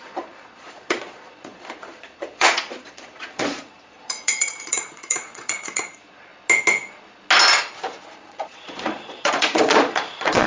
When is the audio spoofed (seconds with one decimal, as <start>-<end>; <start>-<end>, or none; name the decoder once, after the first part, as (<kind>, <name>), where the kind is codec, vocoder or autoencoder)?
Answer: 0.0-6.3 (vocoder, Vocos); 8.0-10.5